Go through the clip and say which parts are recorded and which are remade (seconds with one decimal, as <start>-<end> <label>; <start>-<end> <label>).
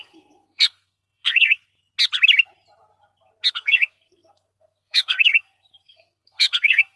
0.0-1.6 remade; 1.6-3.5 recorded; 3.5-7.0 remade